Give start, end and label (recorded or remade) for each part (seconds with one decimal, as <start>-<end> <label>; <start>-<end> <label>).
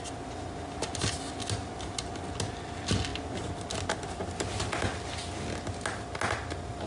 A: 0.0-6.9 recorded